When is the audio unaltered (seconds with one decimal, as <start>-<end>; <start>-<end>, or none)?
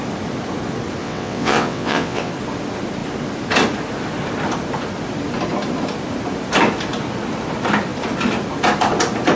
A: 0.0-1.0; 2.3-9.4